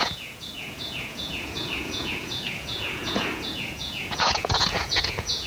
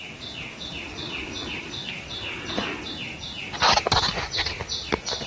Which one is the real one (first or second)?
second